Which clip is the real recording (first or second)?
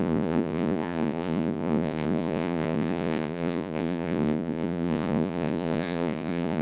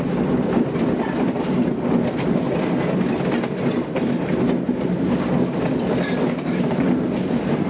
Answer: second